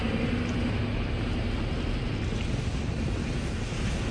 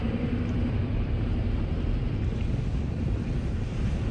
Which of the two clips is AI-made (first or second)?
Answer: second